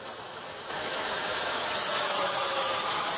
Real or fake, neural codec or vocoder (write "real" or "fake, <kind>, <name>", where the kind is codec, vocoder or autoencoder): fake, autoencoder, DAC-VAE